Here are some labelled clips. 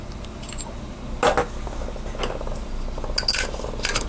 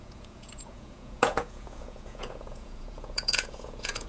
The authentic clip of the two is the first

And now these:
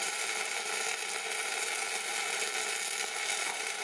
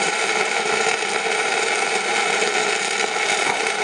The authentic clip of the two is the first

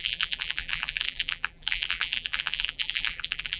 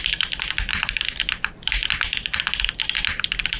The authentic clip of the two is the second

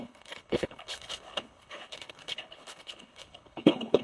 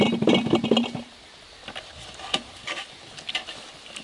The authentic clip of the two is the second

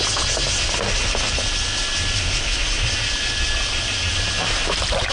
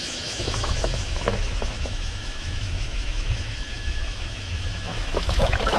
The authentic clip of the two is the first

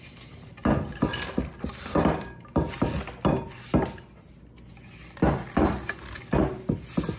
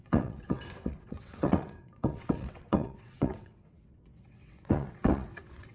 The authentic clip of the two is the first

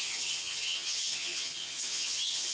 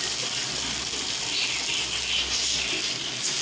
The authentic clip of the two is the second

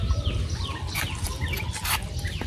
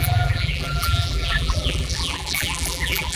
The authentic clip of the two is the first